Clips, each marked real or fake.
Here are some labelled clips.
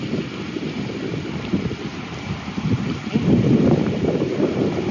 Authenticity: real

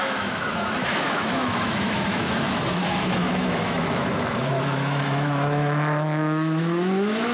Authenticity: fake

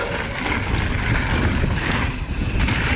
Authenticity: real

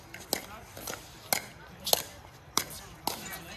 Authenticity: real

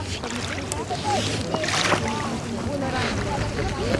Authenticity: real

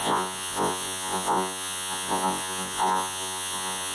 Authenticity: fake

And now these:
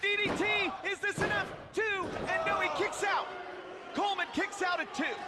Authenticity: real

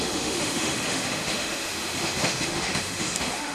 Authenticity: fake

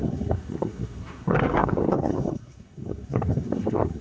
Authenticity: fake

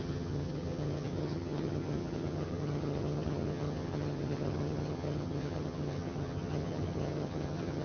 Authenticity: fake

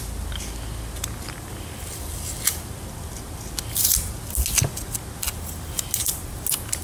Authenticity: real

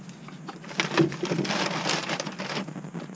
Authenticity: real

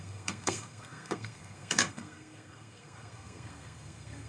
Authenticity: fake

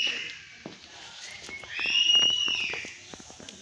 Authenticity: real